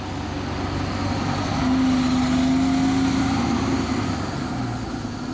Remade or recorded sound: recorded